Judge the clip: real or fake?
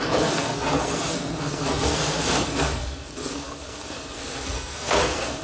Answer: fake